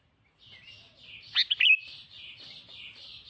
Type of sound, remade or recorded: recorded